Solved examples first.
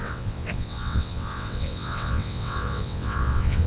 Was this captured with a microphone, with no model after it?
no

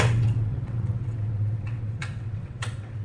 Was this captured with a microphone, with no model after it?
no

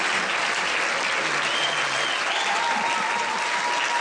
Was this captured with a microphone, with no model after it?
yes